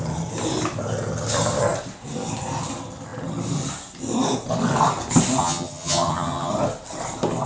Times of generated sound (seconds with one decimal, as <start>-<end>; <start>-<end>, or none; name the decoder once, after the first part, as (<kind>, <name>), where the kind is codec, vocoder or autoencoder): 5.4-6.5 (vocoder, HiFi-GAN)